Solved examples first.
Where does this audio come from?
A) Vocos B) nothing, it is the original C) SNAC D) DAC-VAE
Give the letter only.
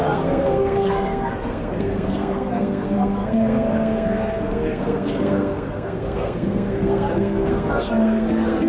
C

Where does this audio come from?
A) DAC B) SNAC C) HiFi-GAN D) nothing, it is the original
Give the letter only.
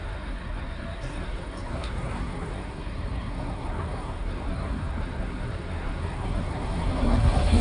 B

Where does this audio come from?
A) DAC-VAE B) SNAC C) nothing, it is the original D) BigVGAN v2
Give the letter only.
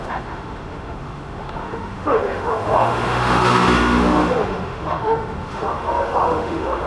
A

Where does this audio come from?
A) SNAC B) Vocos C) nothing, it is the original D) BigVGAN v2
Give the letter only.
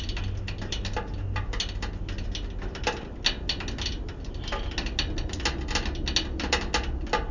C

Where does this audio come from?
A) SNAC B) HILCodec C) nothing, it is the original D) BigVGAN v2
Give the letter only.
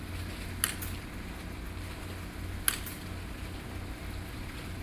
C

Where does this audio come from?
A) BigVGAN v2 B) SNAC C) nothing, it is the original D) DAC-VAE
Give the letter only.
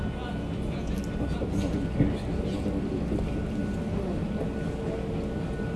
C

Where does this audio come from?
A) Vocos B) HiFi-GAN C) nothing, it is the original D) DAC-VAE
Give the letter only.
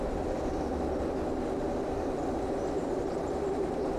C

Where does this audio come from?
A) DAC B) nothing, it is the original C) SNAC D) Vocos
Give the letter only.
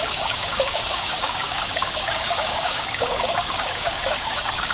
A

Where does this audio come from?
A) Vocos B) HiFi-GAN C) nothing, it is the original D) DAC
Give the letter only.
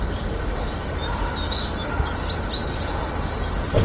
C